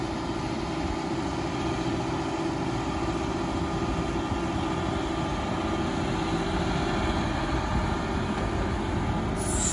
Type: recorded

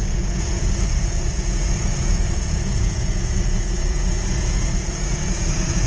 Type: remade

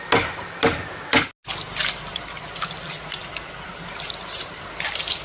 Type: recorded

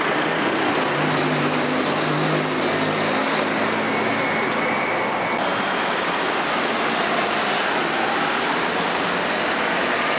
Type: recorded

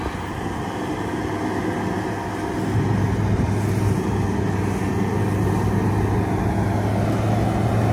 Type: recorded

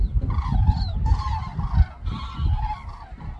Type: recorded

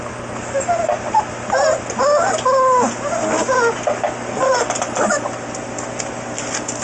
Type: recorded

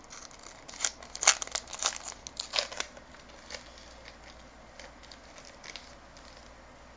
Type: recorded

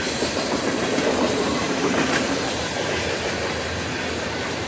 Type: remade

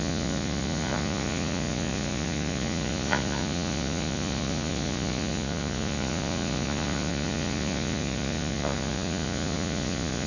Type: remade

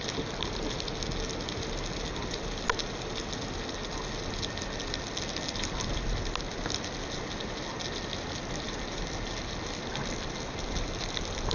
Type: recorded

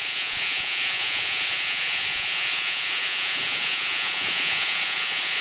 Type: remade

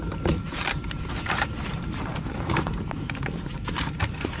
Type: remade